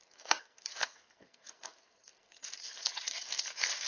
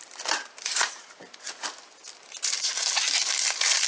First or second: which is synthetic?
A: first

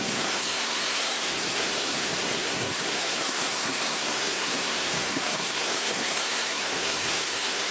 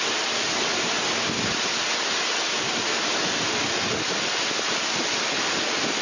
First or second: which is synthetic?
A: first